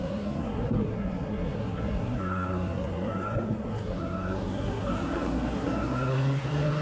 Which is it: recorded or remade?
remade